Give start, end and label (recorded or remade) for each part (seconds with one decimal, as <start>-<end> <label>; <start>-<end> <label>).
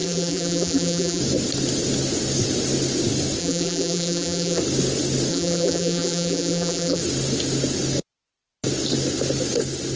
0.0-1.2 remade; 1.2-3.4 recorded; 3.4-4.6 remade; 4.6-5.3 recorded; 5.3-7.0 remade; 7.0-10.0 recorded